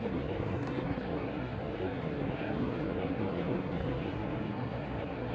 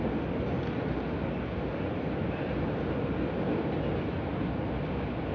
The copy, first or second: first